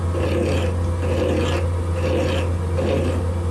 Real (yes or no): yes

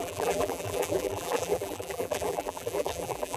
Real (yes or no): no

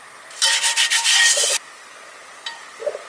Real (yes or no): no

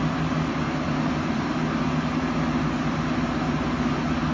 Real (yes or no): yes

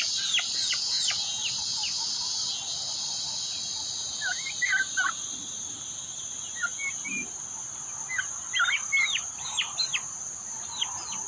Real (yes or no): yes